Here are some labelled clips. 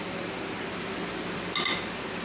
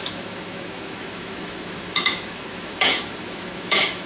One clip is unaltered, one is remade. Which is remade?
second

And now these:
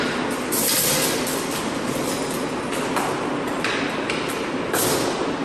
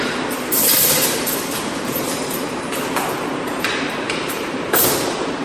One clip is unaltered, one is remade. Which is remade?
second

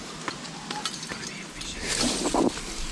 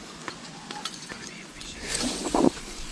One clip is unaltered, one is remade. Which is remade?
second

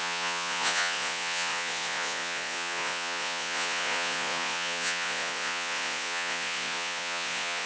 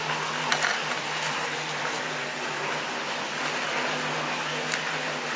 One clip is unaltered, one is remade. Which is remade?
first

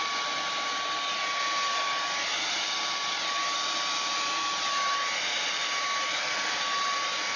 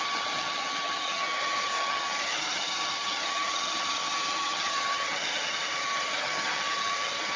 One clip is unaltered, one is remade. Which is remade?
second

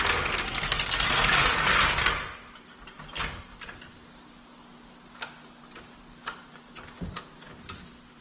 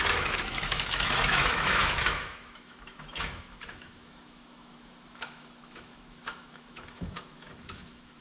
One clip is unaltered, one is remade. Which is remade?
second